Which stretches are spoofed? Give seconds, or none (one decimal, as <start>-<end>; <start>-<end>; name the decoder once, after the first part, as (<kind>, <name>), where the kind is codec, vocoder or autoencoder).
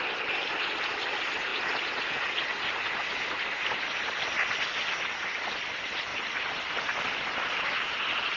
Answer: none